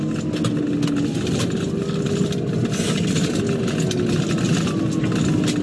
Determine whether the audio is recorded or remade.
recorded